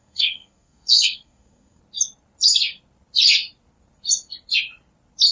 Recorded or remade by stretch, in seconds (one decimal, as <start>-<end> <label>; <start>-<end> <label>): 0.0-1.8 remade; 1.8-5.3 recorded